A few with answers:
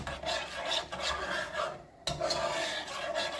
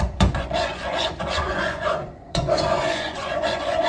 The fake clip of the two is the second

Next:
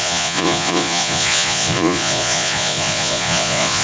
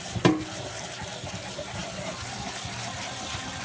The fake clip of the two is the first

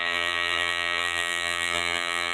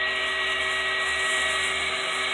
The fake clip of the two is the first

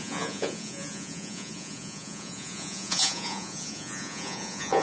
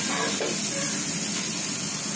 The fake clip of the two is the first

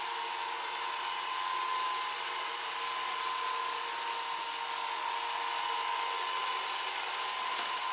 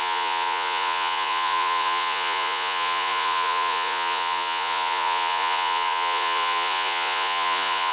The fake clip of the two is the second